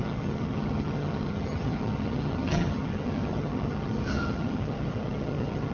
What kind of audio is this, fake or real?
fake